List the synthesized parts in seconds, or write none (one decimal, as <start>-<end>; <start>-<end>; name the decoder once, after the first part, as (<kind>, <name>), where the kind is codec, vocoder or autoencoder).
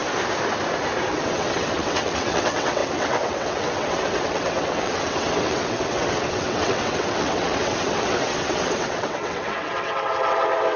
1.1-10.8 (vocoder, WaveNeXt)